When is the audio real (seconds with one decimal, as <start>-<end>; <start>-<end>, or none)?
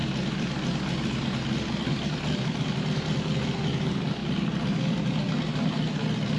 0.0-6.4